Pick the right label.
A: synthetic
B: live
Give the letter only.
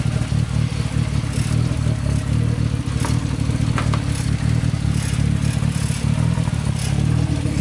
B